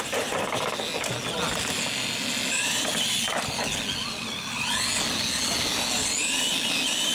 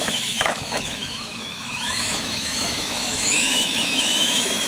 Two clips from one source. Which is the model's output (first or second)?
second